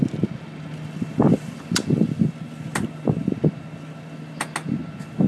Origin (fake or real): real